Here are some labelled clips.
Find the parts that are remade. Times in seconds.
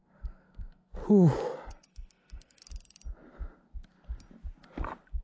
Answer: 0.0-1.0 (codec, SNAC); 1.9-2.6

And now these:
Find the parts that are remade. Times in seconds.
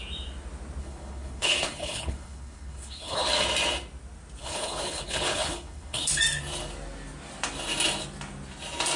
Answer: 0.8-3.3 (codec, HILCodec); 4.4-6.0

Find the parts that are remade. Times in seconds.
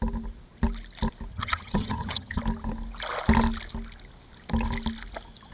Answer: 1.3-2.4 (vocoder, HiFi-GAN)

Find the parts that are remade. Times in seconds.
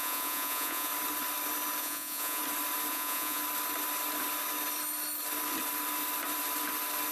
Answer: 0.0-0.9 (vocoder, Vocos); 1.8-2.4; 2.9-3.4